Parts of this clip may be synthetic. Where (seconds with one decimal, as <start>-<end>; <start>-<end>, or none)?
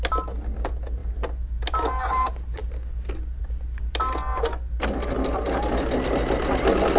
none